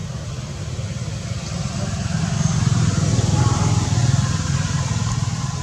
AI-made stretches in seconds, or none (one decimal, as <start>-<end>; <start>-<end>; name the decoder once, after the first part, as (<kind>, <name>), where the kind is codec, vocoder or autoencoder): none